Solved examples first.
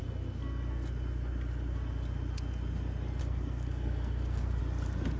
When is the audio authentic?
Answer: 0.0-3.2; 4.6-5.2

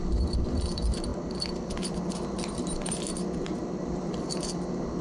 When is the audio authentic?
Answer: none

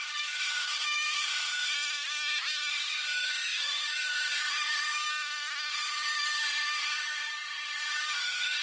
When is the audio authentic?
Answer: 1.7-2.7; 5.1-5.7

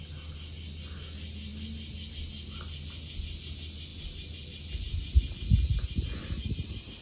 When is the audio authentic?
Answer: 0.0-7.0